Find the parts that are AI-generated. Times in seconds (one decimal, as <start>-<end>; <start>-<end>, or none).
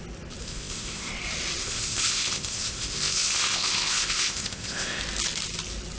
0.4-1.1; 1.6-5.0